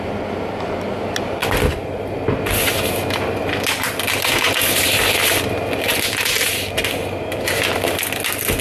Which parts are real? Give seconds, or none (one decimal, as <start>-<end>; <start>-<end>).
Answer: 0.0-8.6

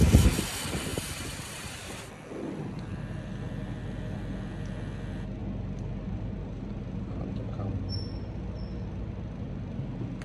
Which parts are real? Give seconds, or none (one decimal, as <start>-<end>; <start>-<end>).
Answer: 0.0-0.9; 2.1-7.2; 7.7-10.2

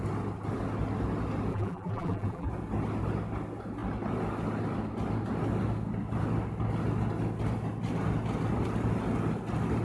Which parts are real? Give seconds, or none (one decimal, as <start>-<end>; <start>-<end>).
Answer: 0.0-1.5; 2.5-9.8

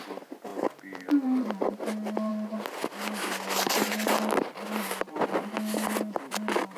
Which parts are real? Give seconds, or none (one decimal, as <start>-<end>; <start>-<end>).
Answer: 0.0-6.8

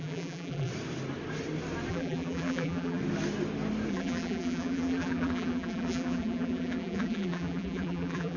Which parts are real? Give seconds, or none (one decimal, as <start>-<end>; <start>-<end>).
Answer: 0.7-1.9; 3.0-3.9

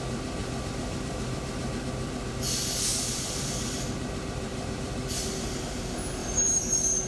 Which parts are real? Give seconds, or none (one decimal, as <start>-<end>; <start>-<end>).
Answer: 0.0-0.4; 1.7-2.9; 3.5-4.5; 5.6-6.2

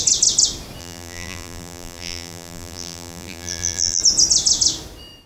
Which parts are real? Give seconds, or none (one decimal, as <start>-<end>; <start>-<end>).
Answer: 0.0-0.8; 4.0-5.3

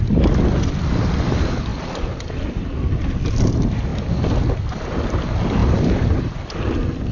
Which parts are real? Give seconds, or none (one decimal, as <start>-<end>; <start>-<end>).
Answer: 0.0-5.6; 6.6-7.1